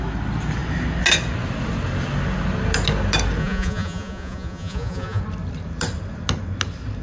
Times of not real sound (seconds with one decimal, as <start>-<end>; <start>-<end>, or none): 3.4-5.2